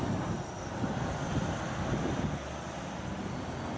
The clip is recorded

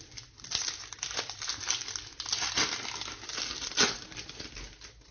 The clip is recorded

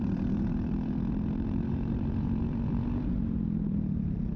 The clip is remade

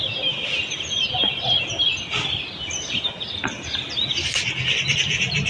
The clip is recorded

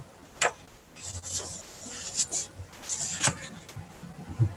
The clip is recorded